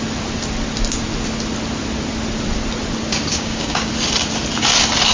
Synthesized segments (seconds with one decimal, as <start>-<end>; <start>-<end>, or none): 3.3-3.9